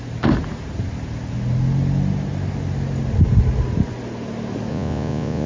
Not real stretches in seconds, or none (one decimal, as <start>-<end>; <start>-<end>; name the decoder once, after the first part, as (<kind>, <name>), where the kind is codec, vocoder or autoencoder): 4.7-5.5 (vocoder, Vocos)